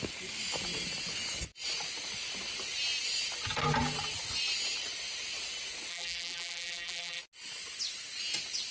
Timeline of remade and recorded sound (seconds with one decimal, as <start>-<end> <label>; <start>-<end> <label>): 0.0-5.9 recorded; 5.9-7.2 remade; 7.2-8.7 recorded